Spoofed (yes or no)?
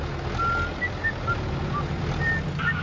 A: no